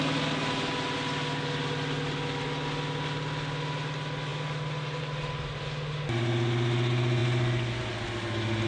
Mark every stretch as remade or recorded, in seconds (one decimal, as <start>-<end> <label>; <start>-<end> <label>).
0.0-8.7 recorded